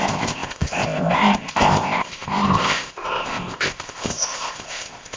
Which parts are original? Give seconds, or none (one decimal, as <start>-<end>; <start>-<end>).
none